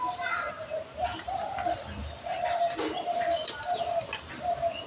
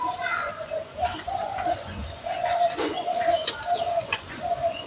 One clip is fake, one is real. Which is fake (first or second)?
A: second